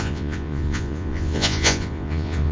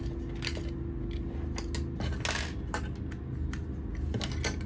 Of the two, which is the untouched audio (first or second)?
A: second